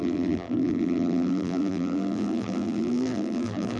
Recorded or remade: remade